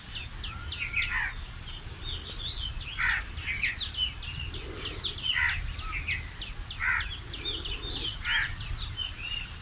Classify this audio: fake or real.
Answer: real